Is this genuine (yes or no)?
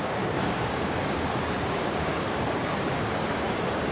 no